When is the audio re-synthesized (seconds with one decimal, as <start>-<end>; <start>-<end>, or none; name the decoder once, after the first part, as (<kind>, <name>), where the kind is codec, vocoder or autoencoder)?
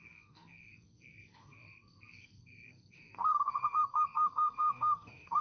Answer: 0.0-5.4 (codec, SNAC)